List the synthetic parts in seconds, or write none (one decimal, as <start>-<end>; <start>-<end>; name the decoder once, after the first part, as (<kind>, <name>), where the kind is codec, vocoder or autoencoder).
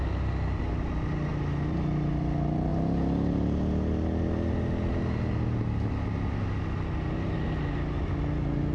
none